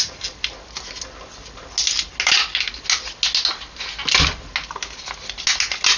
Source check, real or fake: real